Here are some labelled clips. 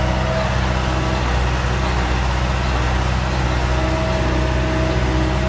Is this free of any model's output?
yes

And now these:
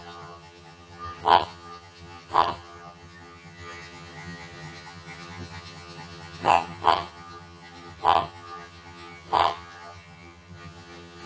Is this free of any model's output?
no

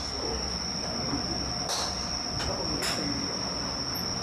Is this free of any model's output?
yes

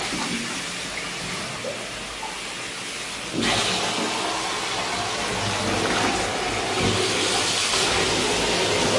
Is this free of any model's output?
yes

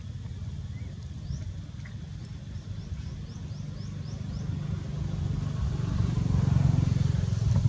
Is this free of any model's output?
yes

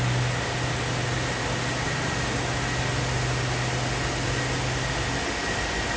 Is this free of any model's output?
yes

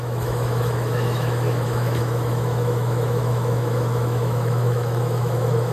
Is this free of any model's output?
no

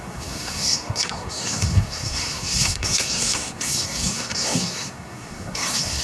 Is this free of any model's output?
no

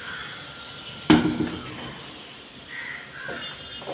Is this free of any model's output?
yes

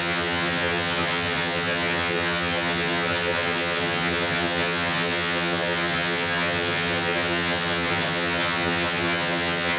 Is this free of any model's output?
no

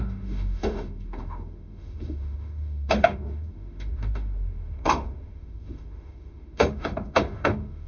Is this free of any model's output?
no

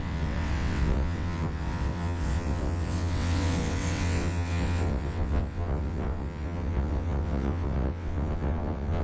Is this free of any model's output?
no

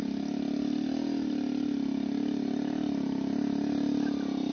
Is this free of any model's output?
yes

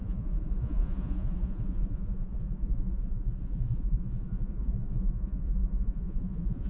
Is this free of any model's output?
no